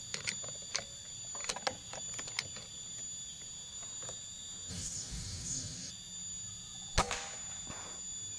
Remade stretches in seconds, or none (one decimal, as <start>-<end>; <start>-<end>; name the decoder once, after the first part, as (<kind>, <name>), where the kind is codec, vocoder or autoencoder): 4.7-5.9 (codec, DAC)